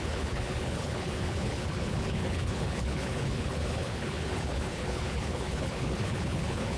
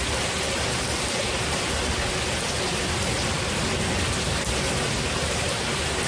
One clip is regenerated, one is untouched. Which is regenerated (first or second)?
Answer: first